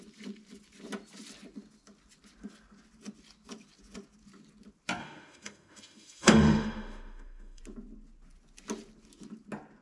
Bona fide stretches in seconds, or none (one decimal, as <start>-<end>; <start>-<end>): 0.0-5.0; 7.6-9.8